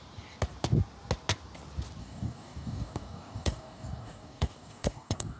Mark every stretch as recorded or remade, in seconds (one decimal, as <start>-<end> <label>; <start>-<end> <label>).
0.0-2.0 recorded; 2.0-5.4 remade

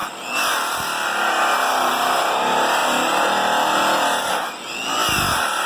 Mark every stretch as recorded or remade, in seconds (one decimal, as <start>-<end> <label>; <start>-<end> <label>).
0.0-5.7 recorded

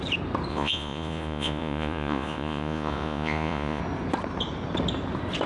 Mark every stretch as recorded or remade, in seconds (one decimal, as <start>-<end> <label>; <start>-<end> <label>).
0.0-0.5 recorded; 0.5-3.8 remade; 3.8-5.5 recorded

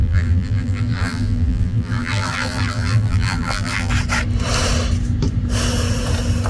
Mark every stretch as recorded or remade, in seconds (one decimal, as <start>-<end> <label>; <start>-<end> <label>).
0.0-3.9 remade; 3.9-6.5 recorded

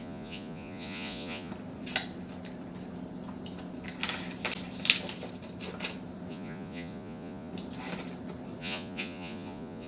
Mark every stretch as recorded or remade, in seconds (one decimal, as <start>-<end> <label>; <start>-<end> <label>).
0.0-1.5 remade; 1.5-6.3 recorded; 6.3-7.5 remade; 7.5-8.6 recorded; 8.6-9.9 remade

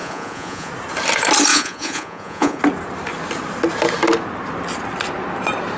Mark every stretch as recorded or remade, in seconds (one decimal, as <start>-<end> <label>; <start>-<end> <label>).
0.0-0.7 remade; 0.7-1.5 recorded; 1.5-2.6 remade; 2.6-5.8 recorded

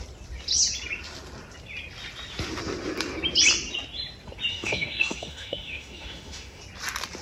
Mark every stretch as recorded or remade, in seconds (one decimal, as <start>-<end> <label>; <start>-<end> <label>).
0.0-4.5 recorded; 4.5-6.6 remade; 6.6-7.2 recorded